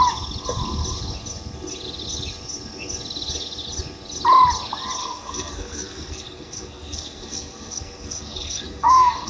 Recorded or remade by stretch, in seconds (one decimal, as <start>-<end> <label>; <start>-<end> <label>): 0.0-5.0 recorded; 5.0-9.3 remade

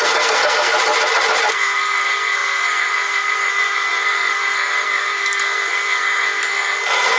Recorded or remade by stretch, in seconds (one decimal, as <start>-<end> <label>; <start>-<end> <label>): 0.0-0.7 remade; 0.7-1.5 recorded; 1.5-7.2 remade

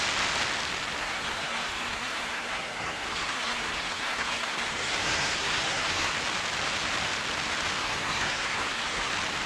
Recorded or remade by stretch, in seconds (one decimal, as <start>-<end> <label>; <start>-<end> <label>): 0.0-1.0 recorded; 1.0-6.1 remade; 6.1-7.8 recorded; 7.8-9.1 remade; 9.1-9.5 recorded

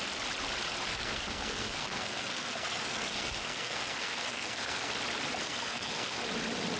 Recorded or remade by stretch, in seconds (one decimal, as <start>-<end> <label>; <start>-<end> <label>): 0.0-0.9 recorded; 0.9-4.9 remade; 4.9-5.4 recorded; 5.4-6.2 remade; 6.2-6.8 recorded

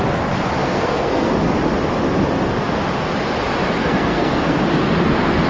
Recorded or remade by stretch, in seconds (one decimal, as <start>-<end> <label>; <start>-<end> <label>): 0.0-0.6 recorded; 0.6-1.3 remade; 1.3-3.8 recorded; 3.8-4.6 remade; 4.6-5.5 recorded